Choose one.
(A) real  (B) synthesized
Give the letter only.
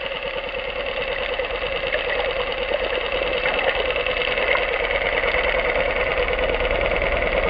A